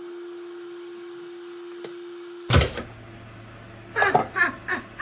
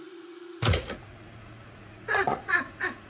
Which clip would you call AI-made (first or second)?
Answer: second